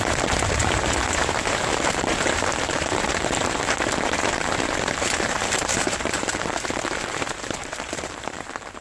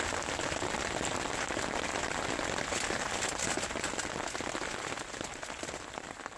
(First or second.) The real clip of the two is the second